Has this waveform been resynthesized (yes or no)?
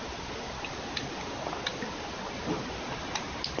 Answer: no